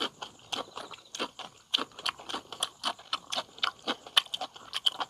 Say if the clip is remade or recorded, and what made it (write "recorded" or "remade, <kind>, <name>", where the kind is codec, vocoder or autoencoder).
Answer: recorded